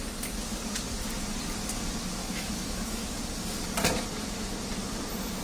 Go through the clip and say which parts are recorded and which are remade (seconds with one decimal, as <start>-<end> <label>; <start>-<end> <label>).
0.0-2.2 recorded; 2.2-3.2 remade; 3.2-5.4 recorded

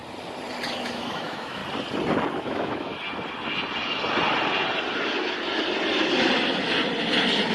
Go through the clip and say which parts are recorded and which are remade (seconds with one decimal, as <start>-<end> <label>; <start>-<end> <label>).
0.0-0.8 recorded; 0.8-1.6 remade; 1.6-2.4 recorded; 2.4-2.9 remade; 2.9-7.5 recorded

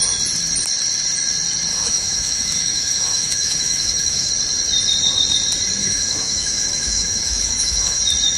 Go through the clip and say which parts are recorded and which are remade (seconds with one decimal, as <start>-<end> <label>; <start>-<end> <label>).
0.0-1.7 recorded; 1.7-4.3 remade; 4.3-5.8 recorded; 5.8-8.0 remade; 8.0-8.4 recorded

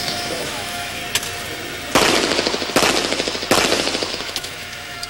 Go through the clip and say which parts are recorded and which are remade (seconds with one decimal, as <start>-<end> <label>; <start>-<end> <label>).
0.0-1.0 remade; 1.0-4.1 recorded; 4.1-5.1 remade

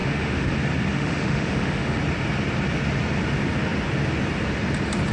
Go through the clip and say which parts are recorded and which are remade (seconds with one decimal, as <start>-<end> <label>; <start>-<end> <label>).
0.0-0.5 remade; 0.5-0.9 recorded; 0.9-2.0 remade; 2.0-5.1 recorded

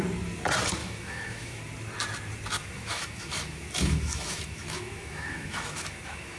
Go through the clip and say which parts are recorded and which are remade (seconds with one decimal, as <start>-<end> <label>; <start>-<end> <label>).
0.0-0.8 recorded; 0.8-1.6 remade; 1.6-2.6 recorded; 2.6-6.4 remade

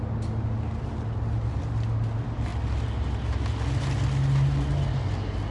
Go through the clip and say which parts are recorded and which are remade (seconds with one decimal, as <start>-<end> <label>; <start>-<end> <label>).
0.0-5.5 recorded

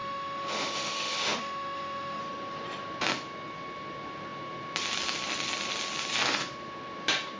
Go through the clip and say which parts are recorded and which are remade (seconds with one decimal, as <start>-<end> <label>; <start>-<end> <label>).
0.0-2.2 remade; 2.2-7.4 recorded